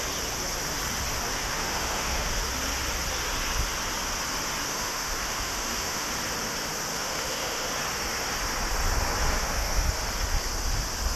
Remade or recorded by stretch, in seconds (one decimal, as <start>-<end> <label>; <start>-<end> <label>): 0.0-1.4 recorded; 1.4-2.3 remade; 2.3-4.7 recorded; 4.7-6.1 remade; 6.1-6.9 recorded; 6.9-7.7 remade; 7.7-9.4 recorded; 9.4-9.9 remade; 9.9-11.2 recorded